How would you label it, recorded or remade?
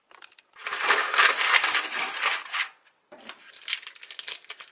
recorded